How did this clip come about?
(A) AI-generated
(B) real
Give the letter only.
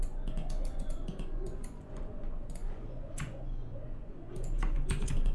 A